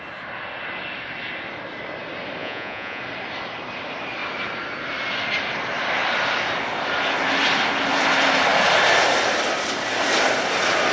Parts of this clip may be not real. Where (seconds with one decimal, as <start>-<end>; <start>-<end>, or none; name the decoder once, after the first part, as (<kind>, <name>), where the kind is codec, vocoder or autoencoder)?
2.4-3.0 (vocoder, Vocos)